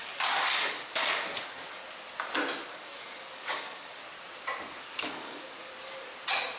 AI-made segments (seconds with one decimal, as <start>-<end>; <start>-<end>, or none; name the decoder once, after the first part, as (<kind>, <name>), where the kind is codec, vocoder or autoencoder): 0.0-1.8 (codec, DAC); 2.7-4.0; 4.8-5.7